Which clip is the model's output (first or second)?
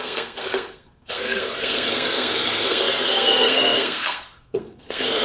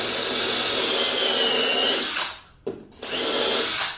first